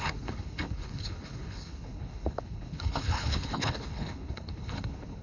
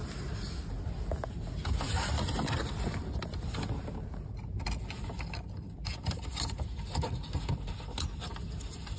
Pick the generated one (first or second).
first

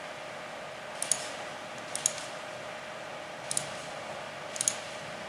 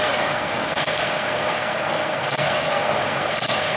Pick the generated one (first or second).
second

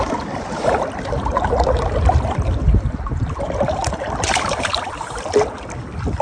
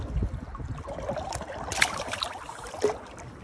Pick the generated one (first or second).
first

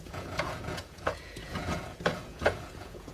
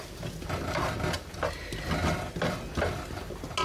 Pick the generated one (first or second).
first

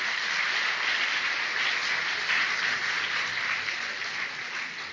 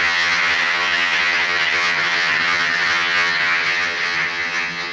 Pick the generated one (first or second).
second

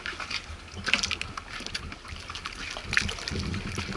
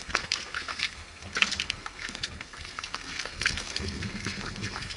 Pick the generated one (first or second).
second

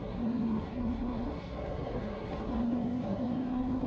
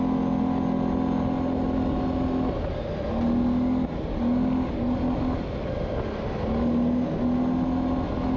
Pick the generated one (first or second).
first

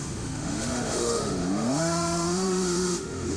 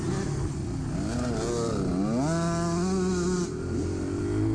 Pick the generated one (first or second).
first